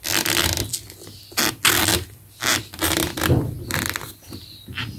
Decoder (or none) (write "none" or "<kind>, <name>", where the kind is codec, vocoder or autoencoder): none